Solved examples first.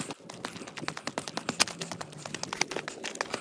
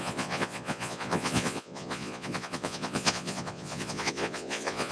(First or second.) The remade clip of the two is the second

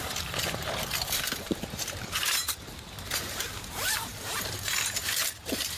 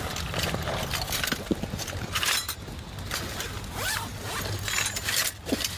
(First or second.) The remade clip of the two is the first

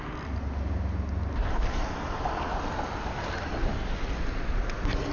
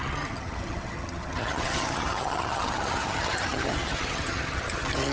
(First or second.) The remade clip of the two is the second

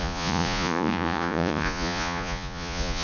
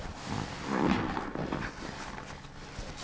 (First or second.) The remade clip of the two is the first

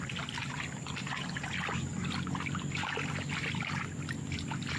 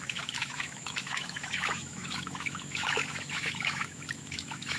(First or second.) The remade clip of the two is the second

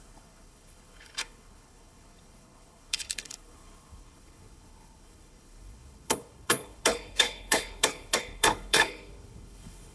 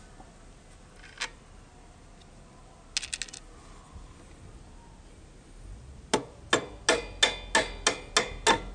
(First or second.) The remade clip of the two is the first